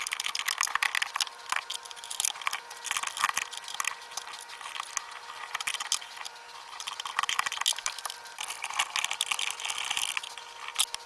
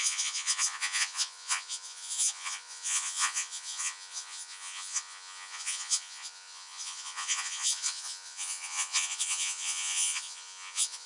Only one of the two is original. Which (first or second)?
first